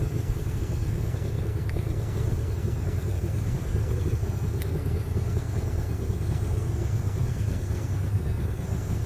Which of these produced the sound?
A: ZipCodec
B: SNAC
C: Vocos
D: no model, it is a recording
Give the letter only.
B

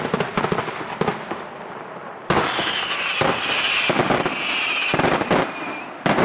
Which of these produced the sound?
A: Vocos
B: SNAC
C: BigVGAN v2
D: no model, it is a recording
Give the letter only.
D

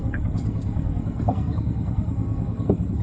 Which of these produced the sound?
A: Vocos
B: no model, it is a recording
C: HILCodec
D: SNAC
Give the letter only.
D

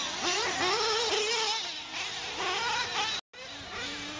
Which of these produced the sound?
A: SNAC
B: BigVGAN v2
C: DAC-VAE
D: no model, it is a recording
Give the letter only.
D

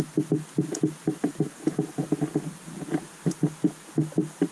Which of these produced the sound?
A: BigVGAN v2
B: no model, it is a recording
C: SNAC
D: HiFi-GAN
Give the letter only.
B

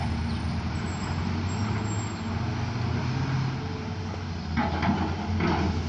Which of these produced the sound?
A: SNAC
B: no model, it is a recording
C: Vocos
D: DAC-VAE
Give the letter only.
B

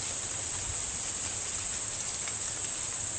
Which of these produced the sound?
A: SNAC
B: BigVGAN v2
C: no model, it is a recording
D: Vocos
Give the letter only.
C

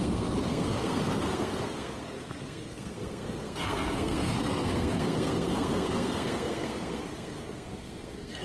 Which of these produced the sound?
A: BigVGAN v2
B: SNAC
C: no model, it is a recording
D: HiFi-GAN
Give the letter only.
B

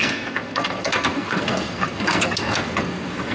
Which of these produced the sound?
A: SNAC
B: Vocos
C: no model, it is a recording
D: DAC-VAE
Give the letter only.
A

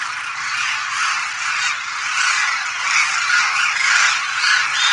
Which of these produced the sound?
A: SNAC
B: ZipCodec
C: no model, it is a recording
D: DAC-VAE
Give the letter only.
C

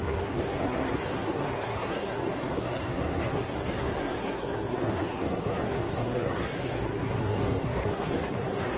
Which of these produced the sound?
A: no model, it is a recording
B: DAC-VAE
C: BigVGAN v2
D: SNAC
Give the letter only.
D